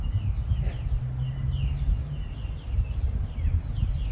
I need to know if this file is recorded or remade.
recorded